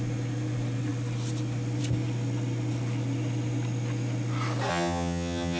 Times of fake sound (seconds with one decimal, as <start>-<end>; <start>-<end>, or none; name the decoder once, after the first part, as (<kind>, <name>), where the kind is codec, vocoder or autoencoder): 4.7-5.6 (vocoder, HiFi-GAN)